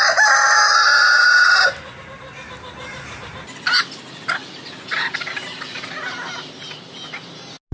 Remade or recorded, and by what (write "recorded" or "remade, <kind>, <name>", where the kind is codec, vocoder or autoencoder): recorded